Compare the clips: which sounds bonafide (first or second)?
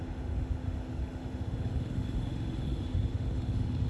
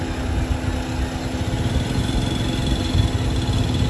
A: second